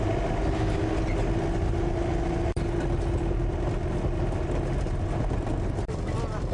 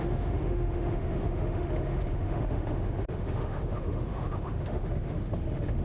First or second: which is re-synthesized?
second